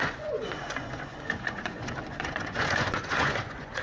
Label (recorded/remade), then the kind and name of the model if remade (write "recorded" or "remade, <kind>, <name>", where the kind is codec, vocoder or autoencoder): remade, vocoder, Vocos